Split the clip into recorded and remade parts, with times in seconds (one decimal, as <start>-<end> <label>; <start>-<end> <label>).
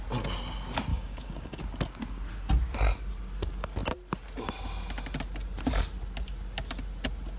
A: 0.0-0.9 recorded; 0.9-1.6 remade; 1.6-7.4 recorded